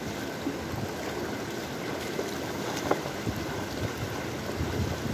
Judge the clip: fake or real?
real